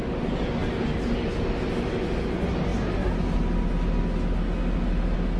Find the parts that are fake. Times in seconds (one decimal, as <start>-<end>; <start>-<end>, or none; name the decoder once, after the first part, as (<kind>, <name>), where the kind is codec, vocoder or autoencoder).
none